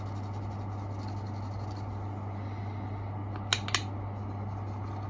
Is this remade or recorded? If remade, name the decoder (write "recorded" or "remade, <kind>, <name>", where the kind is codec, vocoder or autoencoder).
recorded